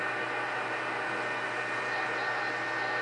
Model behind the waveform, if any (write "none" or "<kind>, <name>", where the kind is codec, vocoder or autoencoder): none